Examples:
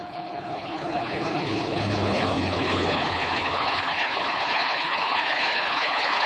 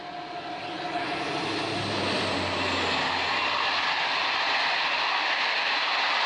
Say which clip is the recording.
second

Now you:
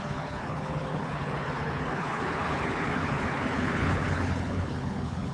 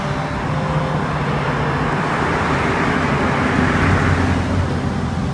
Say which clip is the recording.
second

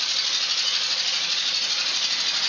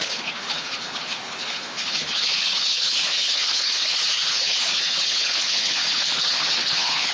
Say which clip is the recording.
first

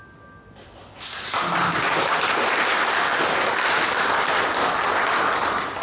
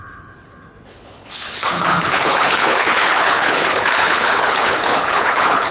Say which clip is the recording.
first